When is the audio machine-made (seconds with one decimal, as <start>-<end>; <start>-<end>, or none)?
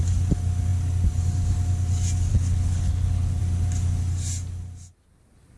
2.3-3.4